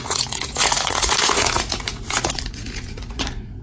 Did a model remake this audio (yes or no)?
yes